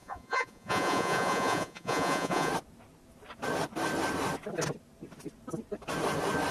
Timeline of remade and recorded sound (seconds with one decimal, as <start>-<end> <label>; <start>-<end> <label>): 0.0-2.5 remade; 2.5-6.5 recorded

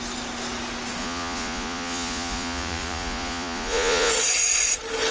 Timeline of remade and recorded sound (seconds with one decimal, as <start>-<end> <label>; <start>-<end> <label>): 0.0-1.0 recorded; 1.0-4.1 remade; 4.1-5.1 recorded

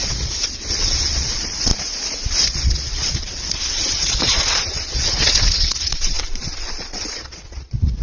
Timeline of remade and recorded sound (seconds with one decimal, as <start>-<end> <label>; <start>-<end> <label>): 0.0-1.7 remade; 1.7-2.4 recorded; 2.4-8.0 remade

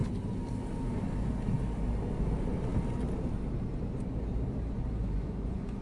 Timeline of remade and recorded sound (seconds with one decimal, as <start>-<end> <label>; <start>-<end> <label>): 0.0-5.0 recorded; 5.0-5.8 remade

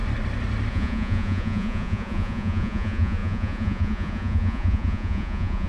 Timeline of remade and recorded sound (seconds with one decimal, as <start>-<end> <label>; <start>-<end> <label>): 0.0-0.7 recorded; 0.7-5.7 remade